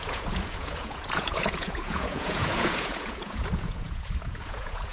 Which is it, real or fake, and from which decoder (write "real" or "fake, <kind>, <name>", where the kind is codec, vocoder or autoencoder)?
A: fake, vocoder, Vocos